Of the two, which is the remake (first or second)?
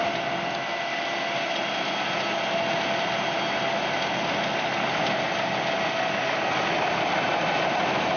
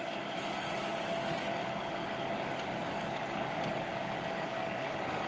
second